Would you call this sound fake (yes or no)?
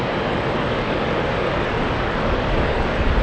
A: yes